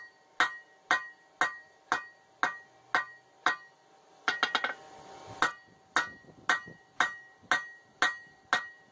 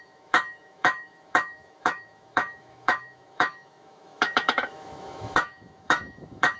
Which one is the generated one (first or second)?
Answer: second